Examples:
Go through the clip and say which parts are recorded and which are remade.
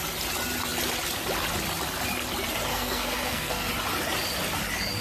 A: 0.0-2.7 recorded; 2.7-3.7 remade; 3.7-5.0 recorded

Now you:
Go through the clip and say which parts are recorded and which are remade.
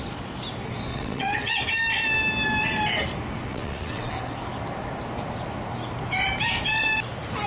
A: 0.0-0.9 recorded; 0.9-1.6 remade; 1.6-3.5 recorded; 3.5-4.1 remade; 4.1-7.5 recorded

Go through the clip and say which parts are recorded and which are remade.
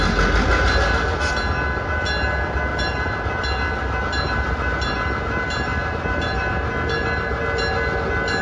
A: 0.0-2.7 recorded; 2.7-3.4 remade; 3.4-5.7 recorded; 5.7-6.5 remade; 6.5-8.4 recorded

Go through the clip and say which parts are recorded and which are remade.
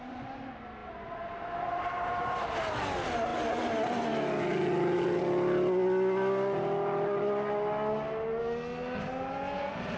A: 0.0-10.0 recorded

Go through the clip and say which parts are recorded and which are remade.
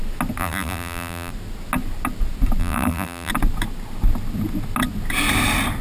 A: 0.0-0.4 recorded; 0.4-1.3 remade; 1.3-2.6 recorded; 2.6-3.3 remade; 3.3-5.8 recorded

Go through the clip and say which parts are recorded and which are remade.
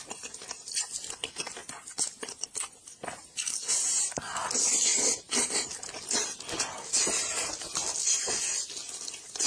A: 0.0-9.5 recorded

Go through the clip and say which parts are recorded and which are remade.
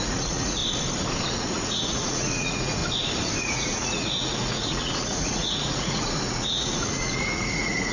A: 0.0-0.6 remade; 0.6-1.3 recorded; 1.3-2.8 remade; 2.8-3.4 recorded; 3.4-7.9 remade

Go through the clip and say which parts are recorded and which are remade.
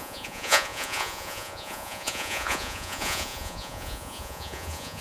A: 0.0-5.0 remade